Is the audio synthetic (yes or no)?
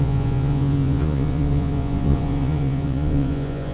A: yes